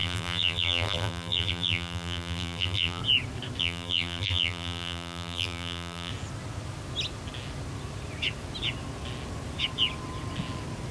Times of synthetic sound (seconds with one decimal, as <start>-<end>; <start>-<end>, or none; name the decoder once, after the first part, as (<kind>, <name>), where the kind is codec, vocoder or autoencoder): 0.0-3.0 (vocoder, BigVGAN v2); 3.6-6.1